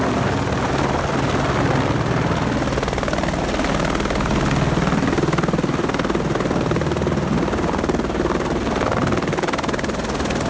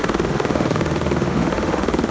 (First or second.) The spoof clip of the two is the second